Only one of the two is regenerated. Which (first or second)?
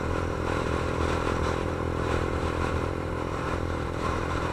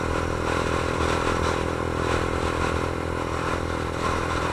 first